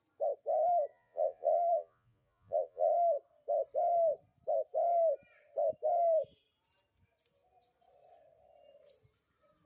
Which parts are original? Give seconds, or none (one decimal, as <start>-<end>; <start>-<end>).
0.0-0.9; 2.9-9.7